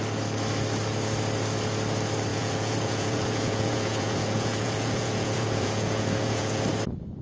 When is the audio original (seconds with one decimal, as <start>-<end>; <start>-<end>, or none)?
0.0-2.3; 6.6-7.2